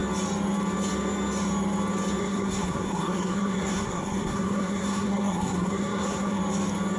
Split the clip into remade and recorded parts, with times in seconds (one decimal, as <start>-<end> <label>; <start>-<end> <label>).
0.0-2.2 recorded; 2.2-6.4 remade; 6.4-7.0 recorded